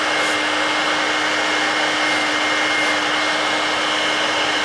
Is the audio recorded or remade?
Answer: recorded